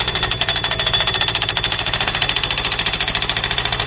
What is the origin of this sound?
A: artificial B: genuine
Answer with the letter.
B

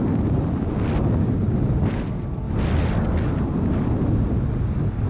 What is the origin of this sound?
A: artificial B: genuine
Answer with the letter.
B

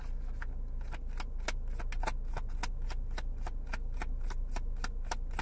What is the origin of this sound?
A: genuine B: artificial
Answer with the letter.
A